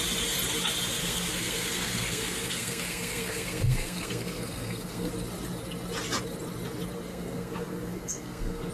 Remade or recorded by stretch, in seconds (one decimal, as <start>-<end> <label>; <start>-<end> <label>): 0.0-1.0 recorded; 1.0-5.1 remade; 5.1-7.1 recorded; 7.1-8.7 remade